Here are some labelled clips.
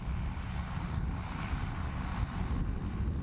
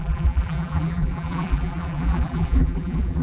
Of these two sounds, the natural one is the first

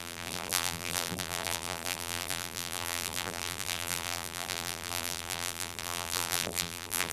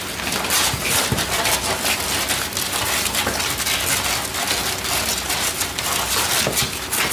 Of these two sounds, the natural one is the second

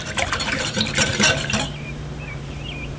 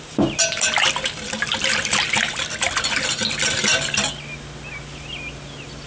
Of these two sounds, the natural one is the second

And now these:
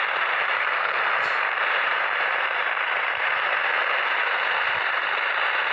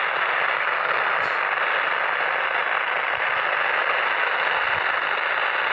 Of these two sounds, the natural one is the second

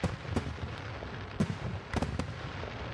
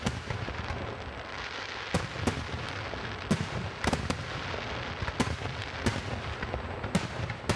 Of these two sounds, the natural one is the second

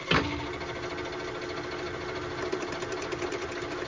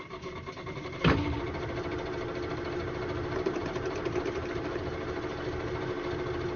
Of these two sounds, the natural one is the first